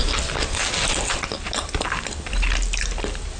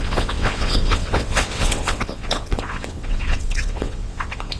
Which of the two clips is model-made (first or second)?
second